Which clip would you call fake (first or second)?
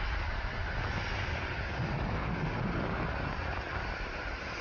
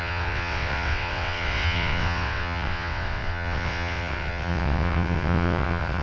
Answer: second